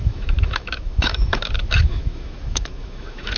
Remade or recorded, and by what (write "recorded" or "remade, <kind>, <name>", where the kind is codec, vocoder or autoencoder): remade, autoencoder, DAC-VAE